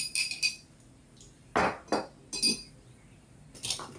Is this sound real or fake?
real